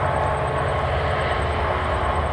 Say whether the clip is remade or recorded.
recorded